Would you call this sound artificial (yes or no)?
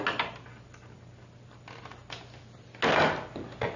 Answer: no